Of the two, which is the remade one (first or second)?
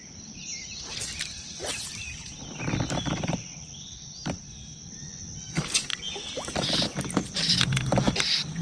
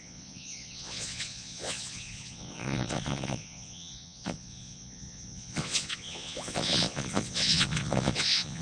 second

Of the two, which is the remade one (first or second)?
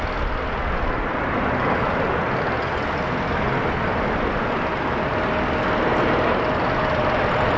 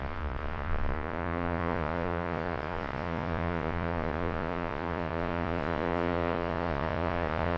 second